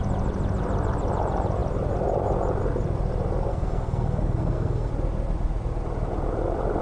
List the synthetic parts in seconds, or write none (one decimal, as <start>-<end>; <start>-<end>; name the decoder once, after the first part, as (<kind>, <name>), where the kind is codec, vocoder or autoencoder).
3.5-4.9 (codec, SNAC)